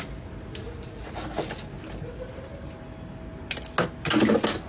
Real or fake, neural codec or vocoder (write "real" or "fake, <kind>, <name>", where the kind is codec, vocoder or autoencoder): real